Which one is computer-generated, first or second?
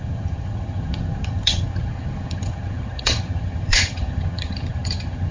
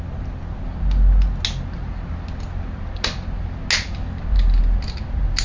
first